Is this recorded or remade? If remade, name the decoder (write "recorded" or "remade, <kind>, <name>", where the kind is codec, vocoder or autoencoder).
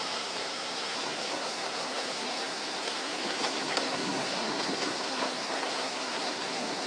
remade, codec, SNAC